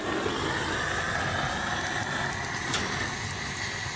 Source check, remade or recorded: recorded